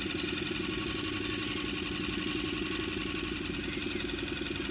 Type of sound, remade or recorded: recorded